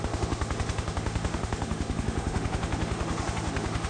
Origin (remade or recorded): remade